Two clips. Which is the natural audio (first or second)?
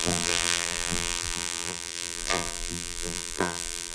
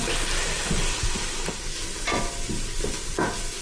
second